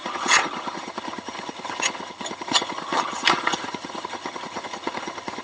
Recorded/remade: remade